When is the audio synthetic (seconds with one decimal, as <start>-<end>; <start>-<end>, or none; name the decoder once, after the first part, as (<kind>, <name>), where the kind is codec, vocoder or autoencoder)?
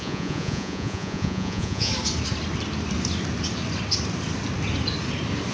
0.0-1.9 (vocoder, Vocos)